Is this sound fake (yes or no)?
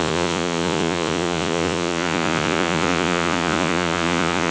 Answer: yes